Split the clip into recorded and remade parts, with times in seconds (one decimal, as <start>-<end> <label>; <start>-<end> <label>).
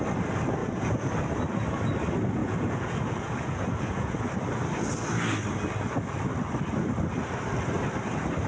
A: 0.0-0.6 recorded; 0.6-1.1 remade; 1.1-2.4 recorded; 2.4-4.3 remade; 4.3-8.5 recorded